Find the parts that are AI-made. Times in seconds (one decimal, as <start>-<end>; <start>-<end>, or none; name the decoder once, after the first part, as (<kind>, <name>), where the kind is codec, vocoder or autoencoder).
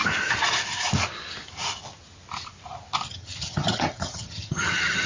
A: 3.1-5.1 (vocoder, HiFi-GAN)